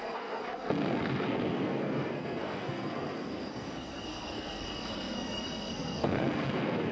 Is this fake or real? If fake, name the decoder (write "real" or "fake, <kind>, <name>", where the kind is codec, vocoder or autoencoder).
fake, codec, SNAC